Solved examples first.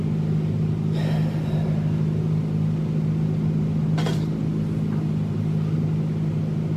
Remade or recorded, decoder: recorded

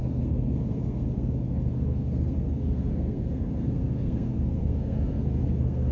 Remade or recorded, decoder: remade, codec, SNAC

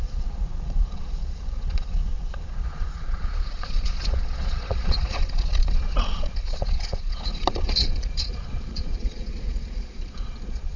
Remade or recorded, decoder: remade, vocoder, Vocos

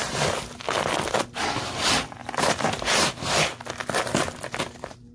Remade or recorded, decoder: recorded